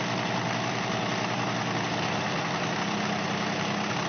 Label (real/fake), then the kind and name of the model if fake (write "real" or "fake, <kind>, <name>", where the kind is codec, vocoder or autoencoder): real